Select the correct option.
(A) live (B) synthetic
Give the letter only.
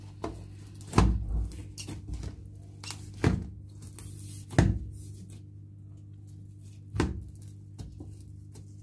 A